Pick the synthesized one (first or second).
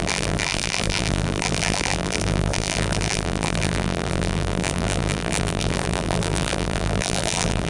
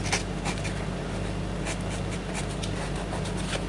first